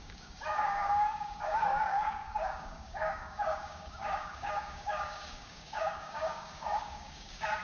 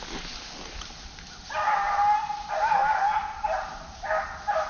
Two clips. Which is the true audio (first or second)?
second